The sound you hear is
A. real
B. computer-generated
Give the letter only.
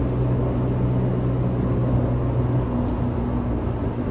A